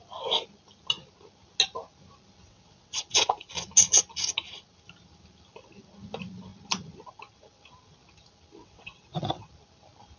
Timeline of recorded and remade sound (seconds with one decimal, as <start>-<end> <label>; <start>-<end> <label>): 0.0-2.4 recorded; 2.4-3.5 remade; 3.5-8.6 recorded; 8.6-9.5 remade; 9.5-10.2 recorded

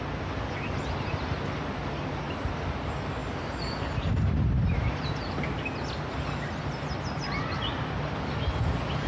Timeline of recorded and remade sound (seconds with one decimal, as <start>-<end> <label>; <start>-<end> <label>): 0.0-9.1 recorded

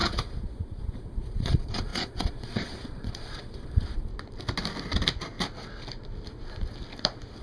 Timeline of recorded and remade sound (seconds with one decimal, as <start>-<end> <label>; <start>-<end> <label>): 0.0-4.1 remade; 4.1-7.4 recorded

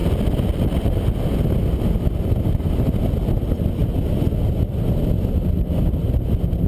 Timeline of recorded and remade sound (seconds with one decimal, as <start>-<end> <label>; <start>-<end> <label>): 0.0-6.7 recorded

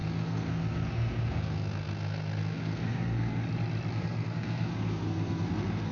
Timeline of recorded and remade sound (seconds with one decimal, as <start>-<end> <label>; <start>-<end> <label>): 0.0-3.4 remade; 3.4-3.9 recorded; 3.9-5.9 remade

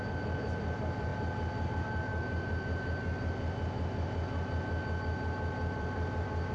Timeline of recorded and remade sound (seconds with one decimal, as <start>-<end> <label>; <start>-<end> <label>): 0.0-1.1 remade; 1.1-1.7 recorded; 1.7-2.1 remade; 2.1-5.0 recorded; 5.0-6.5 remade

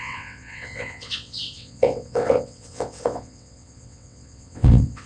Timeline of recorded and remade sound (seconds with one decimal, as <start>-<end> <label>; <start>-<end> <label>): 0.0-5.1 remade